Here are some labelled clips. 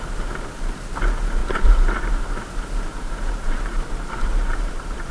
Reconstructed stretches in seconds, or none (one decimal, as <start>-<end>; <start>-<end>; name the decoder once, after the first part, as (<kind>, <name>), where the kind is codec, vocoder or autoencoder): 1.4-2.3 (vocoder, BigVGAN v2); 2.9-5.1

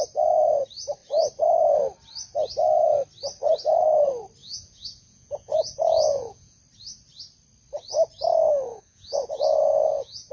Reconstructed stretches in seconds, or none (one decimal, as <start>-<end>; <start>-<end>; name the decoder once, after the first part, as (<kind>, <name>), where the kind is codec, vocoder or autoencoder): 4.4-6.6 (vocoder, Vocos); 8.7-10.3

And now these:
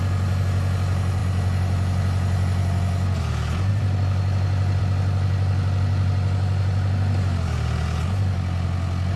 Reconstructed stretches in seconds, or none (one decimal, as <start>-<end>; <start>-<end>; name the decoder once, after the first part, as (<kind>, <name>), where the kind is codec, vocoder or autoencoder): none

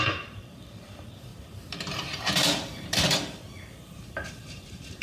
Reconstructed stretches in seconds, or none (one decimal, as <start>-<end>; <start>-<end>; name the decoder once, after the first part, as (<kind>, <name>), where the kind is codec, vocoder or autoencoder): 0.0-1.3 (vocoder, BigVGAN v2); 4.3-5.0

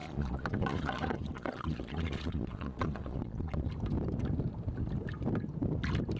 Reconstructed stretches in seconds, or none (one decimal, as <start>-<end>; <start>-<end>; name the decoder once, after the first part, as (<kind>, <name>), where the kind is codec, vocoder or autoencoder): 0.0-3.7 (vocoder, Vocos)

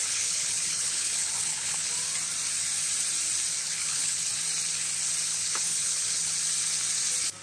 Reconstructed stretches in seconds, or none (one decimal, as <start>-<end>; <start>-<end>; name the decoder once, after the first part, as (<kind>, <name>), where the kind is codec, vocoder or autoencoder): 0.0-1.9 (codec, HILCodec); 3.6-4.3; 5.3-6.3

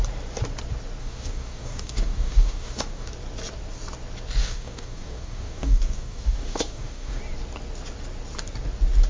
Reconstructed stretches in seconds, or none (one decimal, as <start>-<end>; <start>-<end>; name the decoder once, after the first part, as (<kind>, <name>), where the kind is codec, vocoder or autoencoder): 1.0-3.1 (codec, DAC); 4.4-7.2